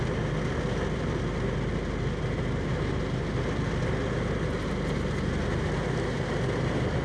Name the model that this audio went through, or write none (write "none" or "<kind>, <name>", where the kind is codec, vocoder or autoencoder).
none